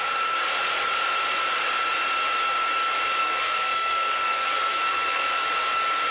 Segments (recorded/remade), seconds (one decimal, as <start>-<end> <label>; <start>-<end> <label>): 0.0-3.2 recorded; 3.2-5.2 remade; 5.2-6.1 recorded